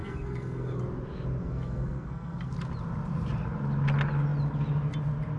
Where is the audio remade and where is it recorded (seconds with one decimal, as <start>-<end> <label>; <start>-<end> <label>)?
0.0-0.8 remade; 0.8-1.4 recorded; 1.4-2.5 remade; 2.5-5.4 recorded